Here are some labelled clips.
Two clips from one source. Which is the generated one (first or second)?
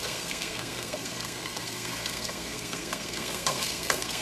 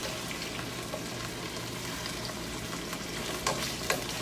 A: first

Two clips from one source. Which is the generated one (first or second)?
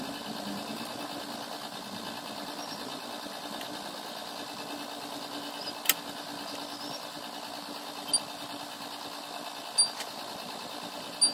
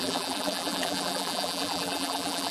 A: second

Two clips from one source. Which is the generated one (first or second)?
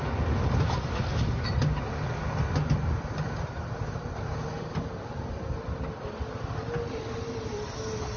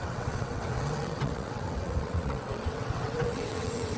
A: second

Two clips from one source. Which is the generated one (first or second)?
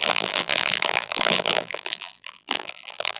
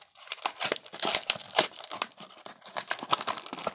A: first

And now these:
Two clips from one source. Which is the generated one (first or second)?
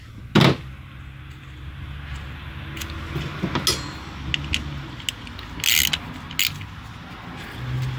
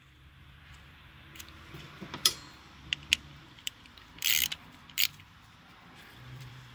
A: second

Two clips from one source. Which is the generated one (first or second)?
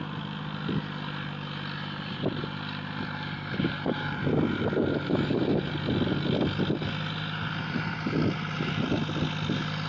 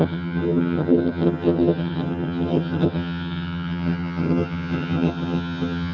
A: second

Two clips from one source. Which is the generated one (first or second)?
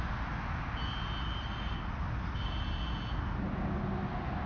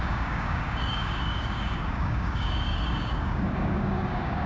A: second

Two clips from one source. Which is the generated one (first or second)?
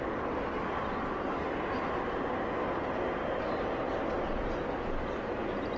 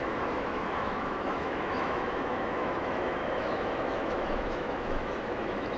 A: second